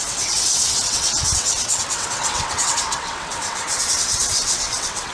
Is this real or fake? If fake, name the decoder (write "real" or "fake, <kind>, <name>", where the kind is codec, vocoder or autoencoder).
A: fake, vocoder, WaveNeXt